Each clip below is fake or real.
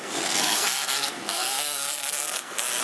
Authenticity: fake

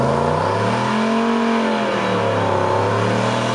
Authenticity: real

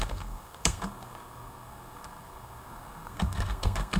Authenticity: fake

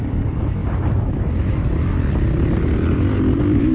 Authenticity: real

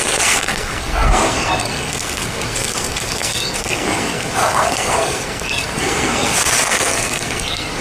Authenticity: fake